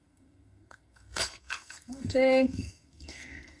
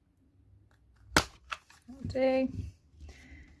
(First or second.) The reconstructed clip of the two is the first